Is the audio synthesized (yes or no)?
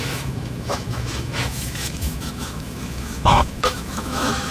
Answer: yes